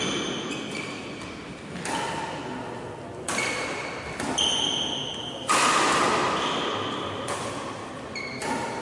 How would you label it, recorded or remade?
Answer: recorded